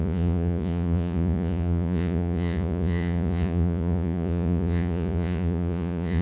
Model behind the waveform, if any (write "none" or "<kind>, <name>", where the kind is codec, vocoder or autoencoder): vocoder, Vocos